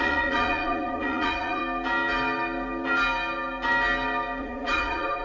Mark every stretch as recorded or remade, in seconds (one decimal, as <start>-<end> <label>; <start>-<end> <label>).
0.0-1.6 remade; 1.6-4.4 recorded; 4.4-5.2 remade

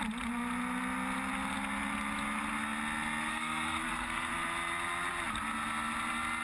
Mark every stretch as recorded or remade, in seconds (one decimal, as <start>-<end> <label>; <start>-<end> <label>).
0.0-3.3 recorded; 3.3-4.3 remade; 4.3-6.4 recorded

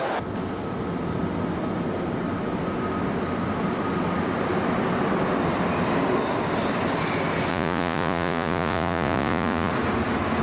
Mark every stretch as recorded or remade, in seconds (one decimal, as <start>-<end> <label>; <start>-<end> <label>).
0.0-7.5 recorded; 7.5-9.7 remade; 9.7-10.4 recorded

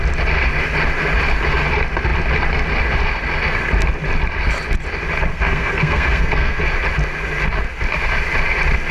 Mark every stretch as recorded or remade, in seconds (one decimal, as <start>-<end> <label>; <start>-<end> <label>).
0.0-5.3 recorded; 5.3-6.6 remade; 6.6-8.9 recorded

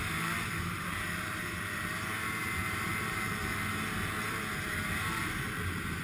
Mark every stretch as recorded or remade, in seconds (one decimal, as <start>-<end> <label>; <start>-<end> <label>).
0.0-2.0 remade; 2.0-2.4 recorded; 2.4-3.6 remade; 3.6-6.0 recorded

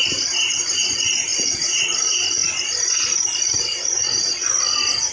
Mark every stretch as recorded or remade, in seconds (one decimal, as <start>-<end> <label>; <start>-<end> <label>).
0.0-1.3 recorded; 1.3-1.8 remade; 1.8-5.1 recorded

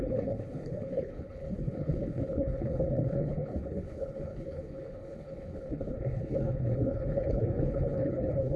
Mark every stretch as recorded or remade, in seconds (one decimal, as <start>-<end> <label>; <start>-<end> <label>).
0.0-8.6 remade

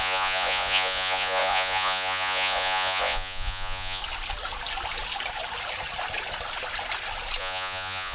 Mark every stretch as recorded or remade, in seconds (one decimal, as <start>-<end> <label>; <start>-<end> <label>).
0.0-4.0 remade; 4.0-7.4 recorded; 7.4-8.1 remade